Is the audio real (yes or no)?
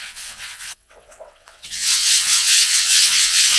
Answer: no